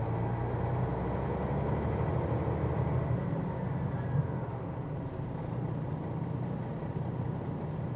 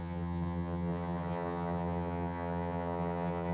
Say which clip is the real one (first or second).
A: first